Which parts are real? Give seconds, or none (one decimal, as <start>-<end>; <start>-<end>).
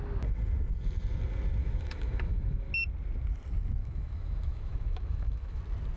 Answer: 0.0-1.6; 2.7-3.8; 5.6-6.0